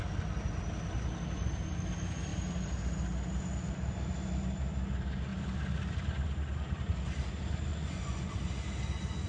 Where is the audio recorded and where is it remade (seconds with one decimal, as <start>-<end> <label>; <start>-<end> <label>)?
0.0-7.7 recorded; 7.7-8.3 remade; 8.3-9.3 recorded